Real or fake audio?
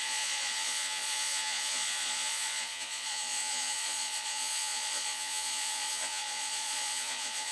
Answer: fake